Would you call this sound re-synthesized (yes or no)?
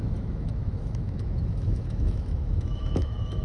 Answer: yes